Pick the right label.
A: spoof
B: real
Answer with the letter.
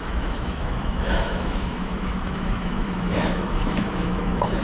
A